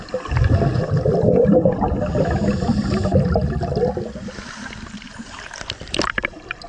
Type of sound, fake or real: real